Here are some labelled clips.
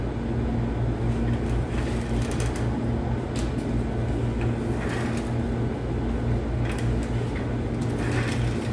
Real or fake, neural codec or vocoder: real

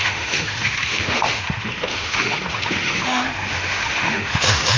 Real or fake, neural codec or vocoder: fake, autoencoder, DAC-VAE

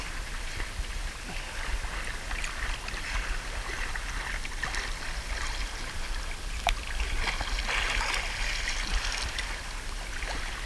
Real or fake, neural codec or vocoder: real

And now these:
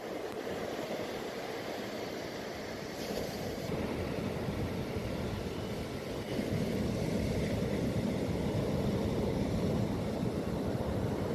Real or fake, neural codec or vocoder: real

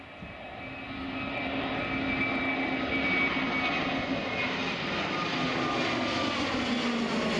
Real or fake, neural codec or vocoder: real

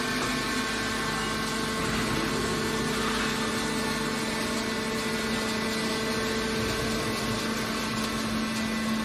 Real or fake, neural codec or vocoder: real